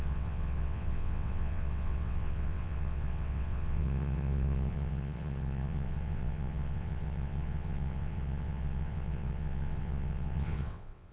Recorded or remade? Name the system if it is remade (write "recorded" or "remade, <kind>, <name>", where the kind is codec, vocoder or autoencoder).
remade, vocoder, WaveNeXt